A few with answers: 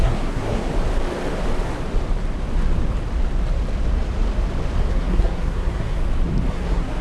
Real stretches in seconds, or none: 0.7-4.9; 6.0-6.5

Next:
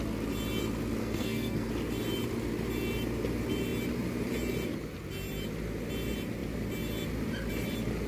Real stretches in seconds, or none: 0.0-1.0; 1.7-8.1